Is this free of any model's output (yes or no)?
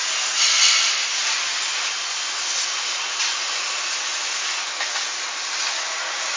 yes